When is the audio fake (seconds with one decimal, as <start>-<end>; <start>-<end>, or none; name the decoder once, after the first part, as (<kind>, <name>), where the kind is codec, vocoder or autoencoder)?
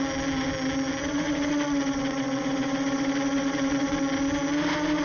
1.0-4.0 (vocoder, WaveNeXt)